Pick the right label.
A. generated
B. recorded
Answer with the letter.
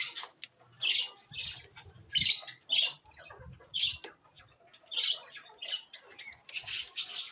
B